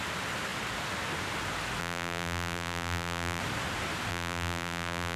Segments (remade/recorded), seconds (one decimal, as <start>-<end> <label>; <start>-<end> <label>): 0.0-1.8 recorded; 1.8-3.4 remade; 3.4-4.1 recorded; 4.1-5.2 remade

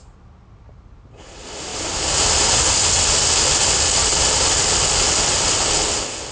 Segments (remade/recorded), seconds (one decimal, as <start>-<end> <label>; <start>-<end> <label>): 0.0-6.3 recorded

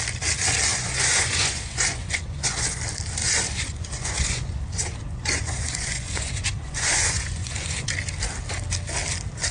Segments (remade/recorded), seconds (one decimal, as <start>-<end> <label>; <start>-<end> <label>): 0.0-0.7 recorded; 0.7-2.8 remade; 2.8-3.2 recorded; 3.2-7.9 remade; 7.9-9.5 recorded

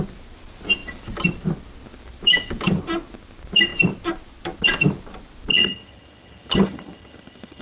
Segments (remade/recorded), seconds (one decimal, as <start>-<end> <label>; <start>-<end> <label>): 0.0-5.5 recorded; 5.5-7.6 remade

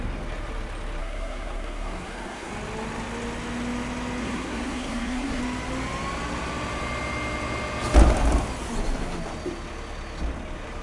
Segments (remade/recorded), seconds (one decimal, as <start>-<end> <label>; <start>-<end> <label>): 0.0-1.0 recorded; 1.0-2.5 remade; 2.5-4.2 recorded; 4.2-5.4 remade; 5.4-10.8 recorded

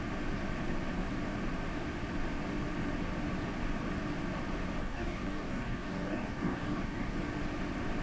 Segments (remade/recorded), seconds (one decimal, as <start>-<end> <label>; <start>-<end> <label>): 0.0-4.8 recorded; 4.8-7.2 remade; 7.2-8.0 recorded

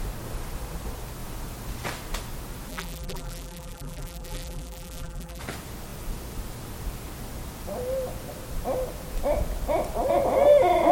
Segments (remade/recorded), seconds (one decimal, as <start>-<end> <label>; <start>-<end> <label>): 0.0-2.7 recorded; 2.7-5.4 remade; 5.4-10.9 recorded

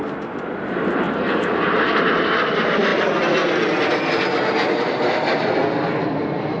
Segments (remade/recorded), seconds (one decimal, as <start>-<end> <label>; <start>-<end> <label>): 0.0-6.6 recorded